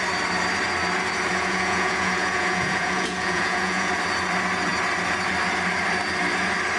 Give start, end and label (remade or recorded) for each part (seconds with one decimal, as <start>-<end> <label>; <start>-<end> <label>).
0.0-1.3 recorded; 1.3-3.9 remade; 3.9-6.8 recorded